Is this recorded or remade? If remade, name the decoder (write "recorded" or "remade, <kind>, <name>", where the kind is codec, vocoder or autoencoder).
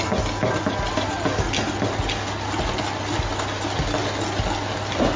recorded